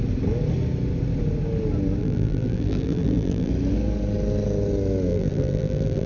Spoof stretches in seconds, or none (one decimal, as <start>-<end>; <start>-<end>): 2.0-3.5; 5.1-6.1